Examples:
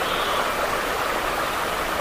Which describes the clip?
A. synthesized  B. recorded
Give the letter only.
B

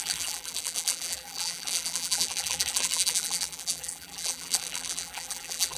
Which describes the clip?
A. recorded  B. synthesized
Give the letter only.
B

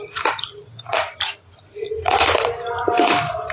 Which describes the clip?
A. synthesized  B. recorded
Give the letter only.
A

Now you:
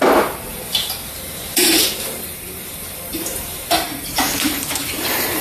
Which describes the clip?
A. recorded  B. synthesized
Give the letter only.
B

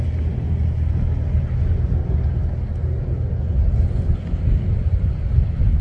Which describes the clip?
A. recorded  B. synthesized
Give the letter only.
A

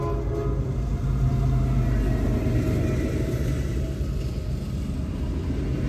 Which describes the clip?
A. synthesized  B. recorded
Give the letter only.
B